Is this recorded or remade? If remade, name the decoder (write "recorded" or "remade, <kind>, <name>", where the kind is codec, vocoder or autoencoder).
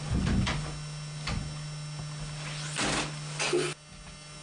recorded